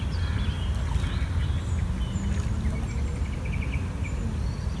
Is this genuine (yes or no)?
yes